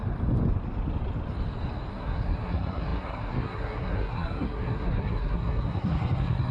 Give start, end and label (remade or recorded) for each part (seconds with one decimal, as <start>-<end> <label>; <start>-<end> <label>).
0.0-1.9 recorded; 1.9-6.5 remade